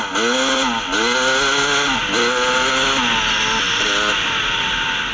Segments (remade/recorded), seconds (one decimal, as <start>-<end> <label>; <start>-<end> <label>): 0.0-5.1 recorded